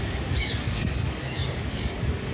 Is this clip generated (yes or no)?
yes